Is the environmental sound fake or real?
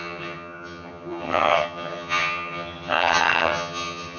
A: fake